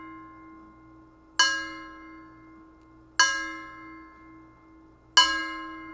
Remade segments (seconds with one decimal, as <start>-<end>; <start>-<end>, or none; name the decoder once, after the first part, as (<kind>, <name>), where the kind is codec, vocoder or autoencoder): none

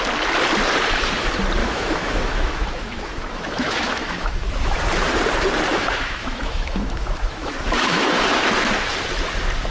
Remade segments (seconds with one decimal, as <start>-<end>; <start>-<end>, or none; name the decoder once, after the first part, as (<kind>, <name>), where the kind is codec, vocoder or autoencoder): 1.6-4.8 (autoencoder, DAC-VAE); 5.7-8.2

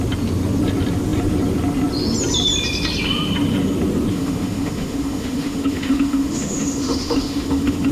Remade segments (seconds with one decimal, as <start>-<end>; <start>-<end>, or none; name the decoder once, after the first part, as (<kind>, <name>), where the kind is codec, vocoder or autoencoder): 4.1-7.9 (autoencoder, DAC-VAE)